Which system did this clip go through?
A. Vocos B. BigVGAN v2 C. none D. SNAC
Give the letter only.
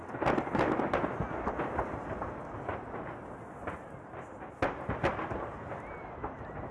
C